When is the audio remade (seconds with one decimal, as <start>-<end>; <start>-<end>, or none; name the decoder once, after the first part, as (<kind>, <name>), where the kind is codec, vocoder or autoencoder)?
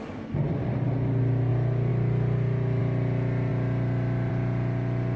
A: none